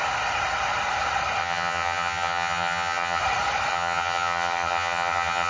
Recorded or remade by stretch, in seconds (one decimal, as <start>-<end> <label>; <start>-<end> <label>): 0.0-1.4 recorded; 1.4-3.2 remade; 3.2-3.7 recorded; 3.7-5.5 remade